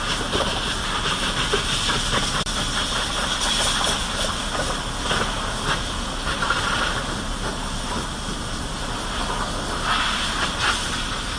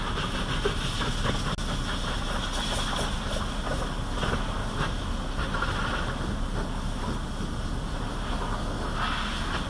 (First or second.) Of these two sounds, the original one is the second